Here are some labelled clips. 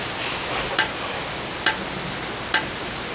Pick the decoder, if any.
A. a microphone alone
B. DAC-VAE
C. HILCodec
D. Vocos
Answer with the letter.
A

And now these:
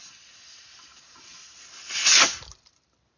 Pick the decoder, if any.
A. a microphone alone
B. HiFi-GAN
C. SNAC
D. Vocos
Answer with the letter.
A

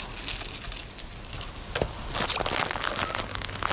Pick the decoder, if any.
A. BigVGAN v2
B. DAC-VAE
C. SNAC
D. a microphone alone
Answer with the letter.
D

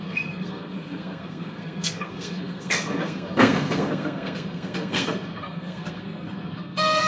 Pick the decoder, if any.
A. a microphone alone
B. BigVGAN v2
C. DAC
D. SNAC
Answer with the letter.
D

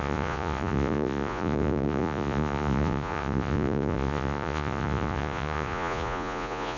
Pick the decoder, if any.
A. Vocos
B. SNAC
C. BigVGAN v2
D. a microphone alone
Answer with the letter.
A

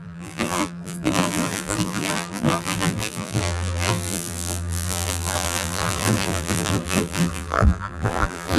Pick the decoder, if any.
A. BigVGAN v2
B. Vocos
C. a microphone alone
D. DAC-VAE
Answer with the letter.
A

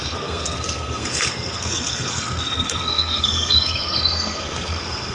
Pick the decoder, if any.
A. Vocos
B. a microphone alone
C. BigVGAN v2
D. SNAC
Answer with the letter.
D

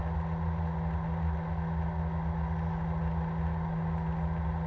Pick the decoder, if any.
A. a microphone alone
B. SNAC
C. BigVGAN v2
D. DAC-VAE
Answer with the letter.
A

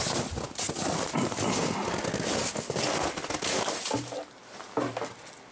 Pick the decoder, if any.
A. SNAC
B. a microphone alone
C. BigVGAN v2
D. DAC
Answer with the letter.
B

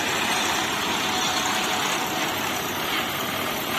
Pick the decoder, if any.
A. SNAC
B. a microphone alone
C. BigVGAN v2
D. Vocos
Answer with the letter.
B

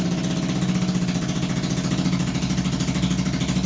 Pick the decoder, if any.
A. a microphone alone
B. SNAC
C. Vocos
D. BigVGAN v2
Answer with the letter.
A